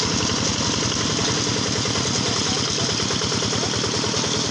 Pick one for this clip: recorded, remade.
recorded